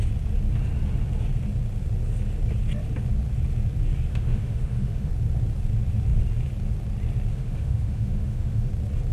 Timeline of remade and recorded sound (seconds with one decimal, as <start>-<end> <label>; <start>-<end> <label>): 0.0-4.1 recorded; 4.1-5.1 remade; 5.1-7.3 recorded; 7.3-8.7 remade; 8.7-9.1 recorded